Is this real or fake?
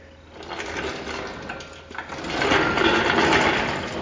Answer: real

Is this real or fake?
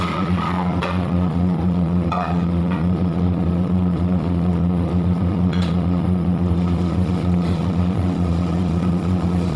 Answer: fake